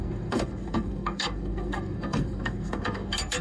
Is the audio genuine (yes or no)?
no